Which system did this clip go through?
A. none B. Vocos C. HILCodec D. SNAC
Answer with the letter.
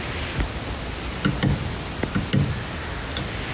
A